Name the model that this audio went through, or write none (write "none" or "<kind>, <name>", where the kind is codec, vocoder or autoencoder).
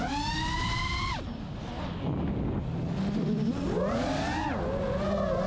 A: none